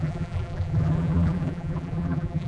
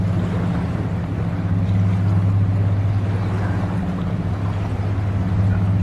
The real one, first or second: second